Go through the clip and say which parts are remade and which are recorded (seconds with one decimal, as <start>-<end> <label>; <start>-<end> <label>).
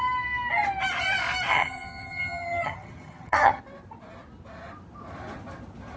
0.0-1.5 recorded; 1.5-3.6 remade; 3.6-6.0 recorded